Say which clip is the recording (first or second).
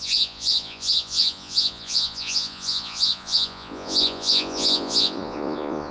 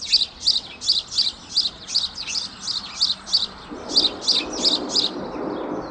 second